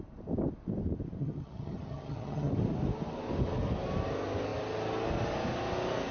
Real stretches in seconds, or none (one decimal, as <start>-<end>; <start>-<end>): 0.0-1.2; 2.5-6.1